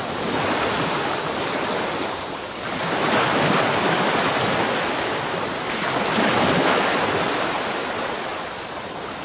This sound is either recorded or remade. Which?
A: recorded